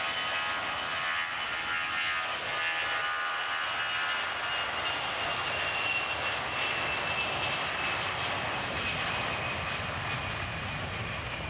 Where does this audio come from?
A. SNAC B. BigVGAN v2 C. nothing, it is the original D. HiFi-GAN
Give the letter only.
C